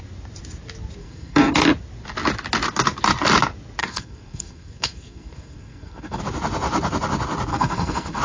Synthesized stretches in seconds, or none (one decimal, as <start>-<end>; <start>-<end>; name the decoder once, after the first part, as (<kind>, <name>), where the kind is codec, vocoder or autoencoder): 1.0-1.5 (codec, SNAC); 3.8-6.2; 7.5-8.2